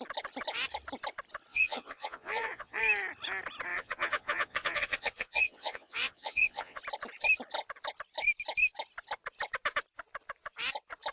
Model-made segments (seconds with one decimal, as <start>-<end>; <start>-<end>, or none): 1.5-2.8; 3.7-6.8